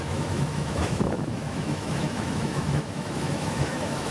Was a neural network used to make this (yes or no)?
yes